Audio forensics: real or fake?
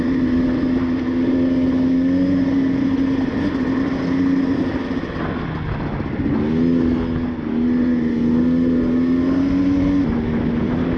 real